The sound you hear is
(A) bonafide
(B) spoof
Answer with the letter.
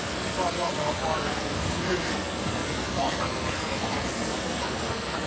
B